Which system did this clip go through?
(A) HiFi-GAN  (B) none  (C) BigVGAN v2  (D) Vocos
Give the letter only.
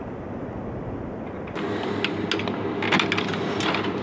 B